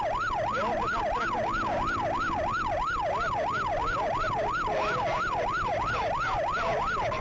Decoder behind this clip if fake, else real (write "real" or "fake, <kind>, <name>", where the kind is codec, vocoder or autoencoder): fake, vocoder, BigVGAN v2